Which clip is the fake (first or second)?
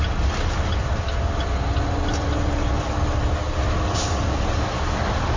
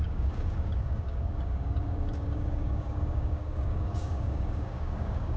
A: second